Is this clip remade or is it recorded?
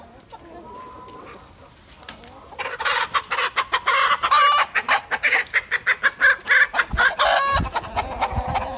recorded